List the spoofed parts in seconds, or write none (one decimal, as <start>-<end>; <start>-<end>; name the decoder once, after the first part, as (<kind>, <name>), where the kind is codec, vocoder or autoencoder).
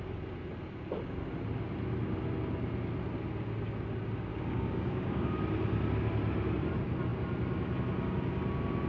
4.3-5.3 (codec, DAC)